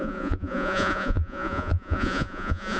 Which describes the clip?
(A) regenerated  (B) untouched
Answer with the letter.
A